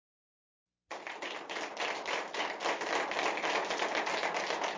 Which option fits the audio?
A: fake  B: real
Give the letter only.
B